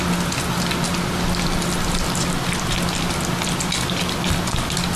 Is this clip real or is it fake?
real